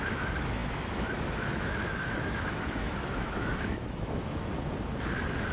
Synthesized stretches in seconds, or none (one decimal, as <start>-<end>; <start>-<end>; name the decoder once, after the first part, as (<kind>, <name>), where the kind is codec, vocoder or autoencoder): 0.0-4.5 (autoencoder, DAC-VAE)